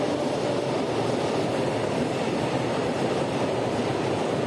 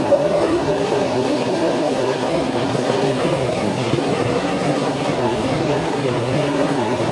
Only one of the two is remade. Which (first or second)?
second